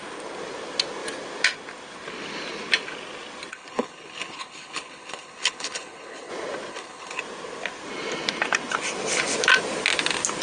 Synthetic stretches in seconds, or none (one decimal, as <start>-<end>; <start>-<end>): 3.5-6.3; 6.7-7.2